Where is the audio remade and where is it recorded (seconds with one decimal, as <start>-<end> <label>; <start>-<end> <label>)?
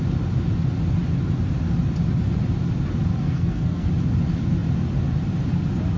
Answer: 0.0-3.1 recorded; 3.1-3.9 remade; 3.9-6.0 recorded